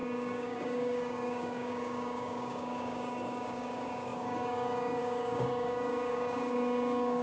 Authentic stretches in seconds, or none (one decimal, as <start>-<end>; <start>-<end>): none